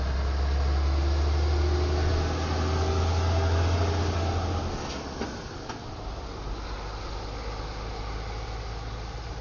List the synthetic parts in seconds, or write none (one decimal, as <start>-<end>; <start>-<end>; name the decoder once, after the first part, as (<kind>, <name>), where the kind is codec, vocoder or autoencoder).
none